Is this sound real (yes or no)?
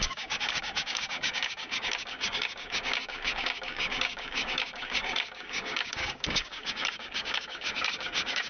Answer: no